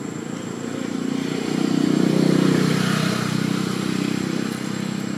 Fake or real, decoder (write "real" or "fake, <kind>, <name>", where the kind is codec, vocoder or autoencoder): real